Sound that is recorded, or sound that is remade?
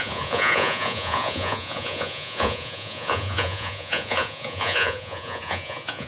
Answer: remade